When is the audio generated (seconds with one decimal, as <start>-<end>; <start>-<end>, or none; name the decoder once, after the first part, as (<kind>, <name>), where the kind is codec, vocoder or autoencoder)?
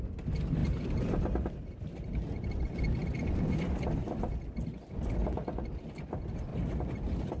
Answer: 0.6-2.5 (vocoder, BigVGAN v2); 6.5-7.4